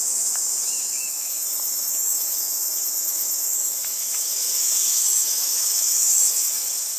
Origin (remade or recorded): remade